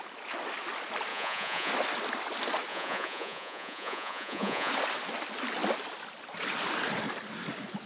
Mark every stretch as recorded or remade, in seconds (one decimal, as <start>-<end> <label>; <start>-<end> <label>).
0.0-1.1 recorded; 1.1-1.7 remade; 1.7-2.7 recorded; 2.7-4.7 remade; 4.7-7.9 recorded